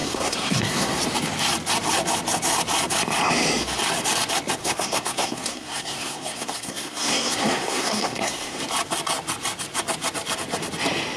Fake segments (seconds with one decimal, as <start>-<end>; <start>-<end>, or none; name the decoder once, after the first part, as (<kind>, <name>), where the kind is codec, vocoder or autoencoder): 0.0-1.0 (codec, SNAC); 4.6-8.6